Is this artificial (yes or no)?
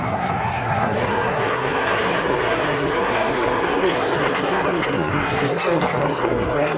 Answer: yes